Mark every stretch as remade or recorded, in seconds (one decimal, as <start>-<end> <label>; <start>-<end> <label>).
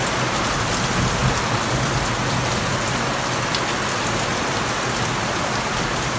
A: 0.0-1.2 recorded; 1.2-2.1 remade; 2.1-6.2 recorded